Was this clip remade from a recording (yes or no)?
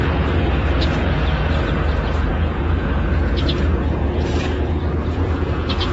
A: yes